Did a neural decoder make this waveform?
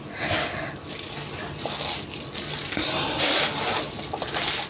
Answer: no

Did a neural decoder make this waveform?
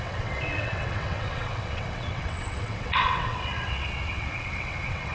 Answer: yes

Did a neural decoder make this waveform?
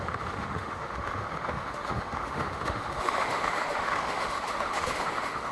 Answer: yes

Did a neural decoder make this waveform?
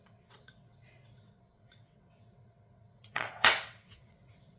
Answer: yes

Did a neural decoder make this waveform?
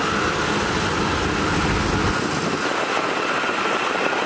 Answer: no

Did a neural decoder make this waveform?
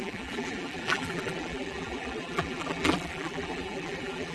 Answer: yes